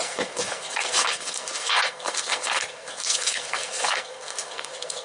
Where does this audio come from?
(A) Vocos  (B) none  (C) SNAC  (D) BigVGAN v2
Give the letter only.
C